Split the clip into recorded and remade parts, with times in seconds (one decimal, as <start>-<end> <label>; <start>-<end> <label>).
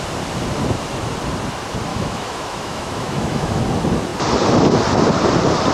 0.0-1.9 recorded; 1.9-3.6 remade; 3.6-5.7 recorded